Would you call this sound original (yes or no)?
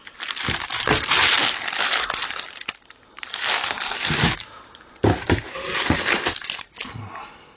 yes